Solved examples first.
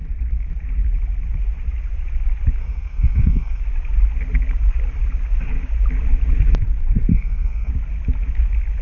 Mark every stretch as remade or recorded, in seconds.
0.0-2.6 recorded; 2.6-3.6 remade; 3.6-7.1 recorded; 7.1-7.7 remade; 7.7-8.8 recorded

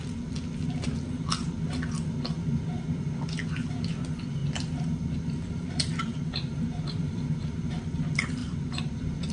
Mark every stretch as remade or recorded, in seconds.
0.0-6.1 recorded; 6.1-8.0 remade; 8.0-8.4 recorded; 8.4-8.9 remade; 8.9-9.3 recorded

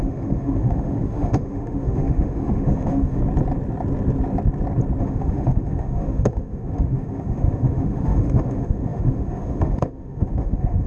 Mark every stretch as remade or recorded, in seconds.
0.0-3.2 remade; 3.2-5.0 recorded; 5.0-10.9 remade

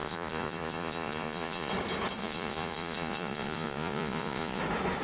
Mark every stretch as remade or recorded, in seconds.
0.0-1.7 remade; 1.7-2.2 recorded; 2.2-4.6 remade; 4.6-5.0 recorded

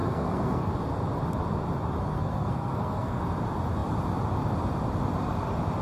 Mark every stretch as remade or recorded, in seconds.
0.0-0.7 remade; 0.7-2.0 recorded; 2.0-3.2 remade; 3.2-5.8 recorded

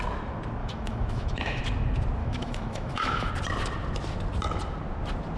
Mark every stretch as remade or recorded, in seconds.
0.0-0.6 recorded; 0.6-1.6 remade; 1.6-2.2 recorded; 2.2-3.3 remade; 3.3-5.4 recorded

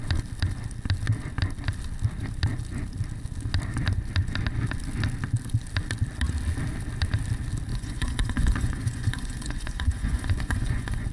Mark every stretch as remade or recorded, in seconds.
0.0-7.7 recorded; 7.7-11.1 remade

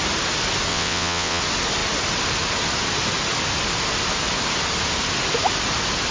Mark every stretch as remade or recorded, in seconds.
0.0-0.7 recorded; 0.7-1.4 remade; 1.4-6.1 recorded